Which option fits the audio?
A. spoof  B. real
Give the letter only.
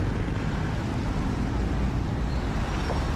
B